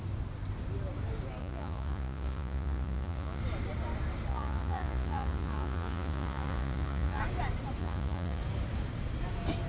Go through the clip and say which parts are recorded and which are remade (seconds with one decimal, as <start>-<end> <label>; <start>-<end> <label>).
0.0-1.4 recorded; 1.4-3.4 remade; 3.4-4.3 recorded; 4.3-7.2 remade; 7.2-7.8 recorded; 7.8-8.4 remade; 8.4-9.7 recorded